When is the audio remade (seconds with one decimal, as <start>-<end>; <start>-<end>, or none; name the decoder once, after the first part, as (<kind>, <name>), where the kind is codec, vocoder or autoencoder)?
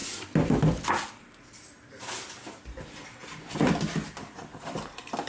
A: 1.2-5.3 (vocoder, BigVGAN v2)